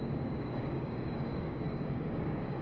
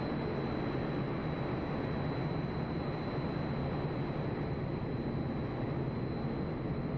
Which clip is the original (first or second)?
second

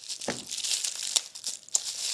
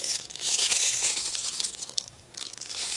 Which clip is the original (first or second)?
first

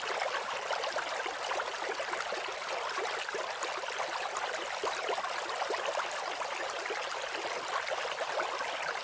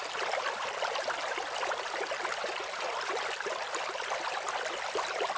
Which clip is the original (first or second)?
first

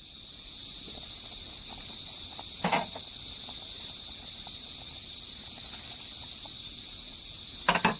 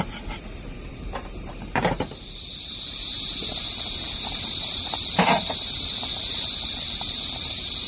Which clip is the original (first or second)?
first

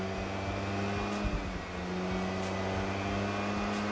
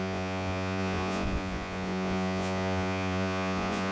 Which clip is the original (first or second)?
first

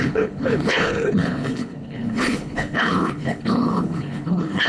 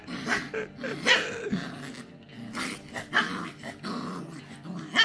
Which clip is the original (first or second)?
second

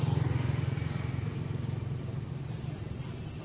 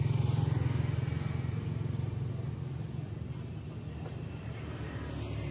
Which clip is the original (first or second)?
second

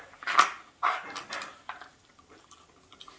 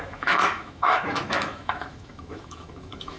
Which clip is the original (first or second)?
first